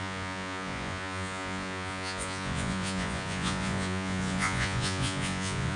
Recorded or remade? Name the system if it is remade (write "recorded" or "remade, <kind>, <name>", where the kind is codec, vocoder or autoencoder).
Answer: remade, vocoder, Vocos